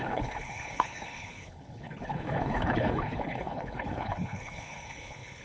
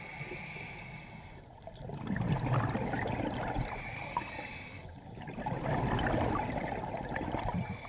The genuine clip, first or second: second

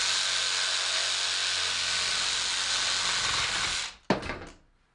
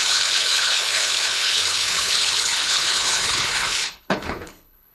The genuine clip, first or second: first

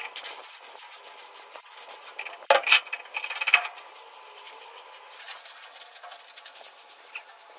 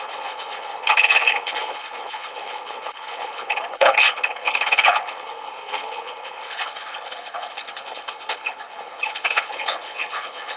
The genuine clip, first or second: first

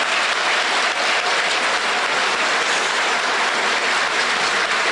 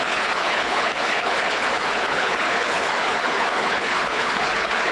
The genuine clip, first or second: first